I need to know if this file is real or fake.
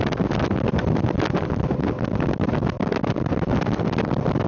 real